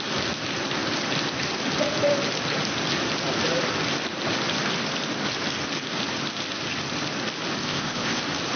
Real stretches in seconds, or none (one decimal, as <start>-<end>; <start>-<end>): 0.0-7.6; 8.2-8.6